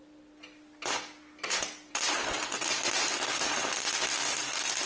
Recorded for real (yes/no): yes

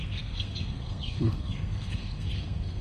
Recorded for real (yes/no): no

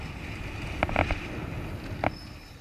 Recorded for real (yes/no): yes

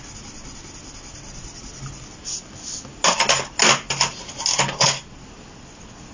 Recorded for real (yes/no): yes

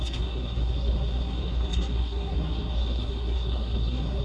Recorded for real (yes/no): no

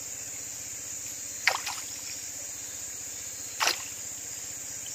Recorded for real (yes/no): yes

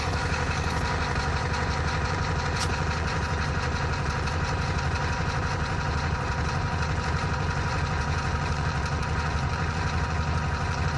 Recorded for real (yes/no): no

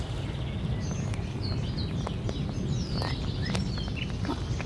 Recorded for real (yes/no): yes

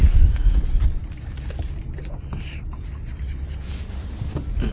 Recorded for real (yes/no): yes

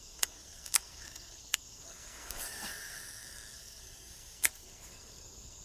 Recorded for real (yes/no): no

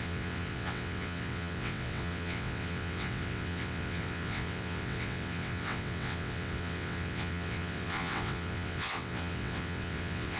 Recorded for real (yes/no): no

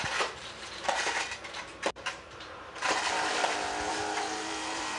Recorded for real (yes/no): no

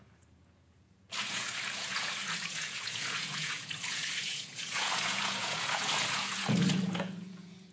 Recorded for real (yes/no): no